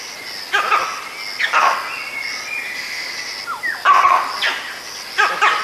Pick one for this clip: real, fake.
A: real